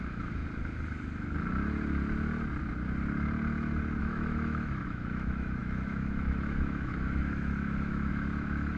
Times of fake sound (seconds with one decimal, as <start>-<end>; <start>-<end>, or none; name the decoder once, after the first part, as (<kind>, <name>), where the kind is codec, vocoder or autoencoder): 0.0-0.4 (autoencoder, DAC-VAE); 4.0-8.8